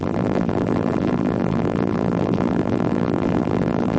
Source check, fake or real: fake